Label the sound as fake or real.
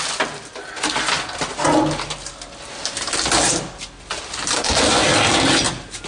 real